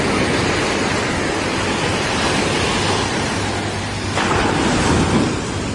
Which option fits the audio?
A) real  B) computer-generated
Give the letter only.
A